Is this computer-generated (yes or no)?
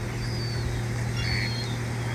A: no